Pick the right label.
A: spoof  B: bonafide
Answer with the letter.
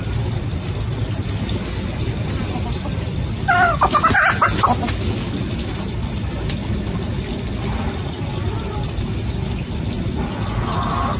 B